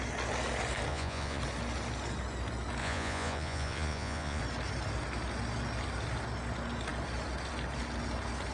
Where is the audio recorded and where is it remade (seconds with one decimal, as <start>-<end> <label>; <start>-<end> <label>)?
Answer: 0.0-0.9 recorded; 0.9-1.4 remade; 1.4-2.8 recorded; 2.8-4.4 remade; 4.4-8.5 recorded